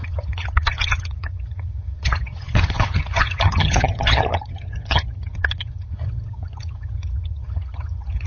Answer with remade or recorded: remade